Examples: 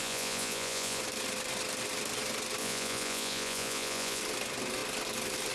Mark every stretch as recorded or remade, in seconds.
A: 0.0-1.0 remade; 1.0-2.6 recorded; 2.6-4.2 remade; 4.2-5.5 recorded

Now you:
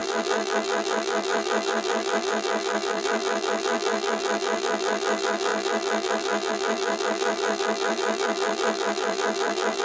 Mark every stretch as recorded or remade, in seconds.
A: 0.0-9.8 remade

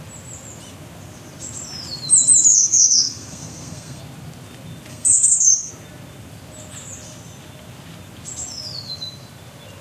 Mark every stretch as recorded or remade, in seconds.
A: 0.0-2.5 recorded; 2.5-4.0 remade; 4.0-4.9 recorded; 4.9-5.7 remade; 5.7-9.8 recorded

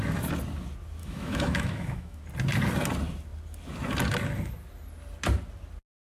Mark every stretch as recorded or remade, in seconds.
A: 0.0-1.0 recorded; 1.0-2.2 remade; 2.2-6.1 recorded